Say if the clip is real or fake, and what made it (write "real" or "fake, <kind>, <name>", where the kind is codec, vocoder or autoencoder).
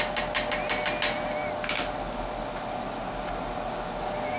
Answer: real